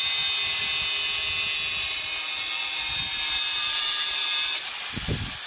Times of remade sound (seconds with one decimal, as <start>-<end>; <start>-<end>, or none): 1.8-4.7